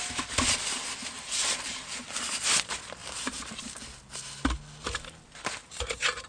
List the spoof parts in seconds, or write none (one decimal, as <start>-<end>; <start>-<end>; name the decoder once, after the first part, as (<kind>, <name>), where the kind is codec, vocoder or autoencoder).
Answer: 1.0-2.3 (vocoder, BigVGAN v2); 3.0-3.8; 5.6-6.3